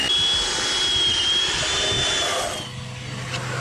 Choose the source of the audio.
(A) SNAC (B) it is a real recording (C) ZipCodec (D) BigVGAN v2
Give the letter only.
B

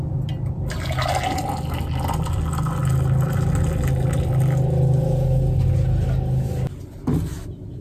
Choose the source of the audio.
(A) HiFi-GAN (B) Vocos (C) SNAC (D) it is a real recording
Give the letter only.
D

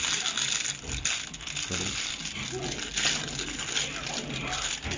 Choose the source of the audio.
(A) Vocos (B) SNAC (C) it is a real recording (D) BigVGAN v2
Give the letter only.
C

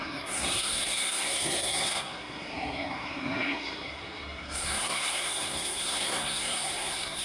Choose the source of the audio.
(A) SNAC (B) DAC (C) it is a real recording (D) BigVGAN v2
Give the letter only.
A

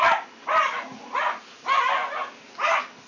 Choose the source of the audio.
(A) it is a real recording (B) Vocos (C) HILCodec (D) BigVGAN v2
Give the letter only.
A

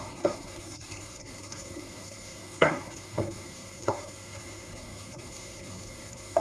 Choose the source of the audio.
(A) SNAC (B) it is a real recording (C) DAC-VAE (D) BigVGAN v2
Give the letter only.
A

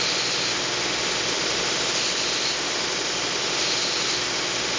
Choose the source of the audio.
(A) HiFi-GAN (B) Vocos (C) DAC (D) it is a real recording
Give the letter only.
D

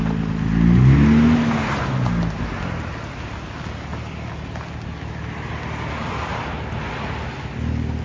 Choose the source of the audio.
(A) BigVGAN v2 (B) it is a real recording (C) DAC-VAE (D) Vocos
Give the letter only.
B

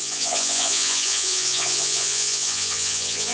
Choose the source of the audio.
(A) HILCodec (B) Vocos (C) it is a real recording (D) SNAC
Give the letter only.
B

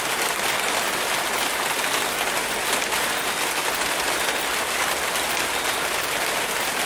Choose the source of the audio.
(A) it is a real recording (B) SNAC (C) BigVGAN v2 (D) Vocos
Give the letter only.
A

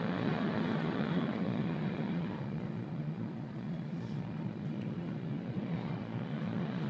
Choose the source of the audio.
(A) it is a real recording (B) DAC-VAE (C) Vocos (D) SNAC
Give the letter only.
C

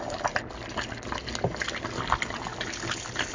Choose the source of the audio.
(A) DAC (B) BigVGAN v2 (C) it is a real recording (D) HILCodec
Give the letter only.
C